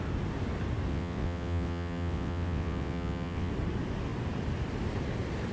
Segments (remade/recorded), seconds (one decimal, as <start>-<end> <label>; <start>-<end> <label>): 0.0-0.9 recorded; 0.9-3.5 remade; 3.5-5.5 recorded

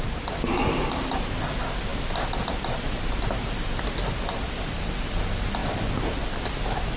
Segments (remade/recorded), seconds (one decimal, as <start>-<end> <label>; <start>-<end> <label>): 0.0-7.0 recorded

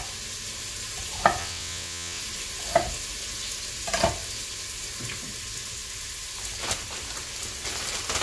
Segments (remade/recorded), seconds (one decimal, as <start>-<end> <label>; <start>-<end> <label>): 0.0-1.4 recorded; 1.4-2.2 remade; 2.2-8.2 recorded

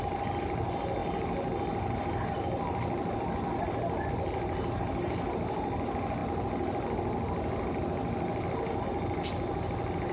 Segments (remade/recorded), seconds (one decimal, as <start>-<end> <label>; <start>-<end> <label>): 0.0-10.1 recorded